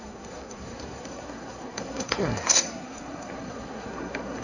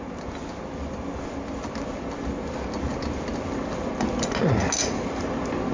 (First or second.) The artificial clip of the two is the first